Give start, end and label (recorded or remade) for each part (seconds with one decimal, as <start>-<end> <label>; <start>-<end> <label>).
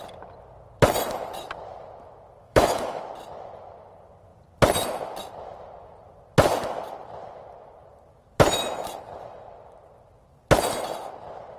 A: 0.0-2.4 recorded; 2.4-3.0 remade; 3.0-11.6 recorded